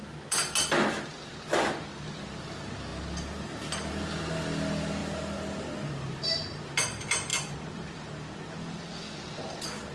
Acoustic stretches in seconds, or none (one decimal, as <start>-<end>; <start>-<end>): 0.0-9.9